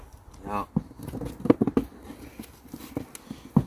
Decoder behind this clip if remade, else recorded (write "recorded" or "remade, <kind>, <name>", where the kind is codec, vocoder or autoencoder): recorded